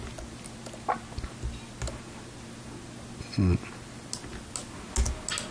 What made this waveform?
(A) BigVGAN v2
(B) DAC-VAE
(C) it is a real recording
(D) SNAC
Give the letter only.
C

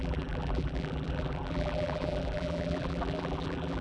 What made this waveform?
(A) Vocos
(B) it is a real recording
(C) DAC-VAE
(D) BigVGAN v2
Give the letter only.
D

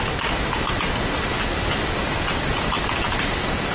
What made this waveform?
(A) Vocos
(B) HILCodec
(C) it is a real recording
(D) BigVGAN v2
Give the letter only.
C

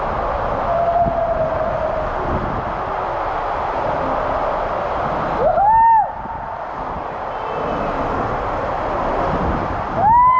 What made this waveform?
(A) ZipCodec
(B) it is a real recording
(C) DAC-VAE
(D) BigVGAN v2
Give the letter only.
B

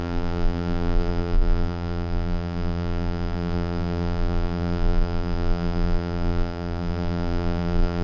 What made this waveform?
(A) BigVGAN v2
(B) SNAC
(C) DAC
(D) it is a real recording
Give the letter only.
A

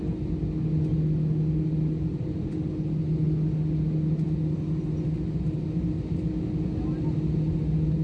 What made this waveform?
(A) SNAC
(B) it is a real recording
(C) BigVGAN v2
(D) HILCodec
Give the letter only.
B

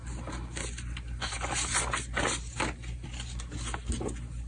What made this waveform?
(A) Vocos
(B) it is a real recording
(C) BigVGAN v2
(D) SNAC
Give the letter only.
B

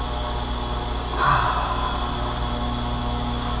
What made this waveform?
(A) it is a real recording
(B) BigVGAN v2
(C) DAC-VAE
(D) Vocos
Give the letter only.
A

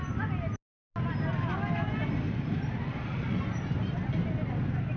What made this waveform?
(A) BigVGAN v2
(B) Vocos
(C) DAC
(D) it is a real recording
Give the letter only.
D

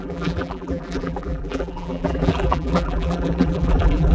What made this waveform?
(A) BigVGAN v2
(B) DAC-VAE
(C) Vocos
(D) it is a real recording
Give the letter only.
A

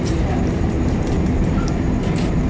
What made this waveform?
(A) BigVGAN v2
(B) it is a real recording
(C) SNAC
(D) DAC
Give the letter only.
A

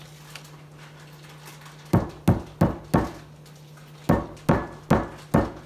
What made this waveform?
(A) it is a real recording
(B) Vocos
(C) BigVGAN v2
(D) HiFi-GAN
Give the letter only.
A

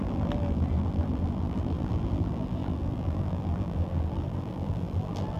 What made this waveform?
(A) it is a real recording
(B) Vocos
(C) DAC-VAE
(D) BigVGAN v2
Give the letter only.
D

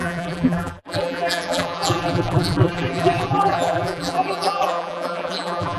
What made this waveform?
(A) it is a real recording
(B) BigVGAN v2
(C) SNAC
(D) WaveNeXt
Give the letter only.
B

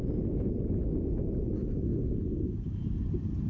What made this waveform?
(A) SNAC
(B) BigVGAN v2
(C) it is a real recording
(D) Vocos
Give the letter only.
C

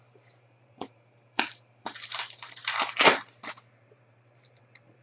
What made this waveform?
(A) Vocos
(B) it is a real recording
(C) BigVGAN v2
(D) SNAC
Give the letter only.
C